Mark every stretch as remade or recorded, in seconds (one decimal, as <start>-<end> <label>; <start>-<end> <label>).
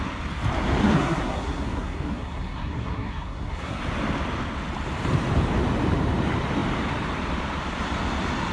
0.0-0.8 recorded; 0.8-3.8 remade; 3.8-8.5 recorded